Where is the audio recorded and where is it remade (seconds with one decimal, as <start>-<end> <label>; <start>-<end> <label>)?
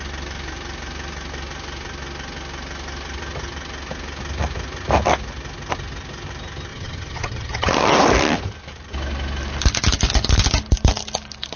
0.0-6.7 recorded; 6.7-7.7 remade; 7.7-11.6 recorded